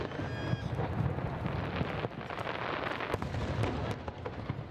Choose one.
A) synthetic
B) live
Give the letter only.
B